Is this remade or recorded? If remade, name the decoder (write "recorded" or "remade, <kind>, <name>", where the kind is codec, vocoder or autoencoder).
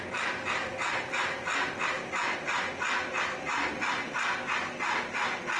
recorded